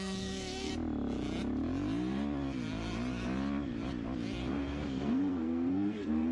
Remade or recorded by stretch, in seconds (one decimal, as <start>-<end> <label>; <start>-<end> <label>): 0.0-0.7 remade; 0.7-4.5 recorded; 4.5-6.3 remade